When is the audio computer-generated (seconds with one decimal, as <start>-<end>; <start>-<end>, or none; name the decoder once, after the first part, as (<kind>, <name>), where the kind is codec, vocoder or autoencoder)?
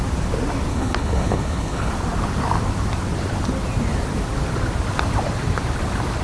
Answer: 0.7-1.9 (codec, HILCodec)